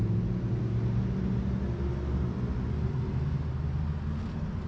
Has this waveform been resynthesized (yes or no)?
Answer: no